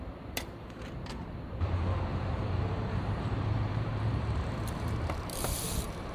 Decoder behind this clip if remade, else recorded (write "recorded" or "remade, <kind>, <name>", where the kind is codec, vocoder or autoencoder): remade, vocoder, BigVGAN v2